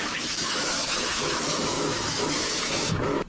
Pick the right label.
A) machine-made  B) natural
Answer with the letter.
A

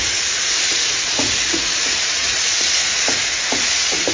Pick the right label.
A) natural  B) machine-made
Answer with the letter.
B